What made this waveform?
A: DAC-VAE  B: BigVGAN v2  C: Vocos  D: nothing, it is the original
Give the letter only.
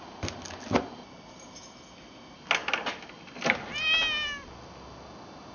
D